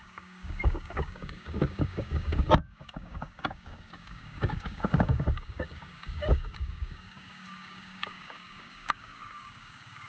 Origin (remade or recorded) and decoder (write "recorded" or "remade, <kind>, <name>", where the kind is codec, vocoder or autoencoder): remade, codec, DAC